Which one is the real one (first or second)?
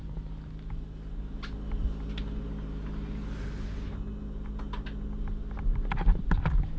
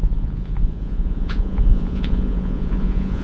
first